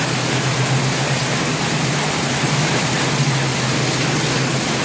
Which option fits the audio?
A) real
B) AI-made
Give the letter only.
A